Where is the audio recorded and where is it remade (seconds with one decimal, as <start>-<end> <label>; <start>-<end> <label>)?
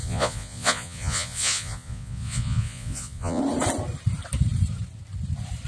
0.0-3.4 remade; 3.4-5.7 recorded